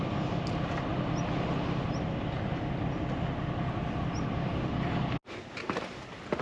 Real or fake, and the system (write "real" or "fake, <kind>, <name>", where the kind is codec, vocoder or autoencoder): real